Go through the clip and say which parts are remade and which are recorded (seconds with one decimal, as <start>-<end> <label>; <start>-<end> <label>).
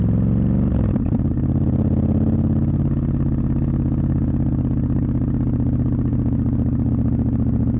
0.0-6.1 recorded; 6.1-6.9 remade; 6.9-7.8 recorded